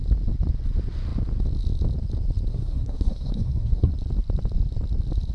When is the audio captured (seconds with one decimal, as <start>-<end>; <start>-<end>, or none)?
0.0-2.5; 3.9-5.3